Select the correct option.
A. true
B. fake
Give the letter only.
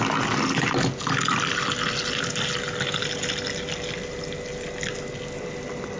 A